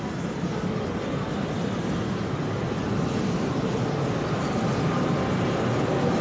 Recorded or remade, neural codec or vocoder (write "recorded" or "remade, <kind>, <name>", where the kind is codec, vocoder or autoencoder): recorded